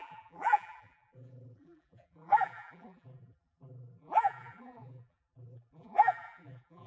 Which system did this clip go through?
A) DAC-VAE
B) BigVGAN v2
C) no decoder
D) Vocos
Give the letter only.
B